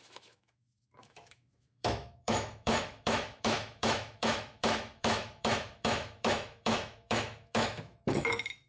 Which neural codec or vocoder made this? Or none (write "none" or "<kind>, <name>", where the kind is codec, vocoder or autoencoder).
autoencoder, DAC-VAE